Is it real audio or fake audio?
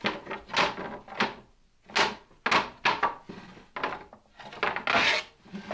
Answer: real